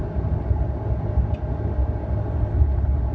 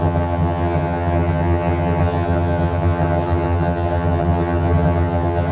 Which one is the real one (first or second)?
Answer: first